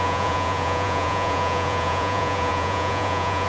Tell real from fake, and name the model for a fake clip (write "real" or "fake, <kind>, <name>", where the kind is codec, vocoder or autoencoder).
fake, vocoder, Vocos